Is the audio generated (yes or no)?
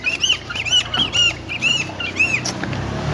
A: no